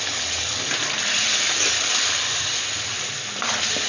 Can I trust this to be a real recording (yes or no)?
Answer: yes